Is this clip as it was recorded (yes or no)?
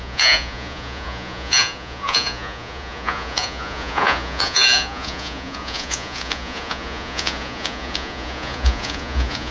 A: no